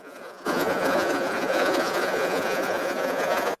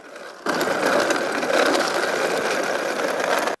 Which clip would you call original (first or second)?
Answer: second